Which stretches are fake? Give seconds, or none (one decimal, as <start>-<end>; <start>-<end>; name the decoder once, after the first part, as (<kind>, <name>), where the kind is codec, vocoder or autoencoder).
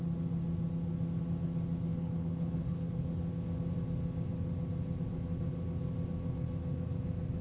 1.9-3.1 (codec, HILCodec)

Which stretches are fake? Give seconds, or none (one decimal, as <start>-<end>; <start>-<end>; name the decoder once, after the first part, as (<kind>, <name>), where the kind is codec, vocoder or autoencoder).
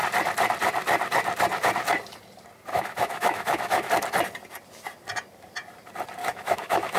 2.7-3.9 (autoencoder, DAC-VAE); 6.2-7.0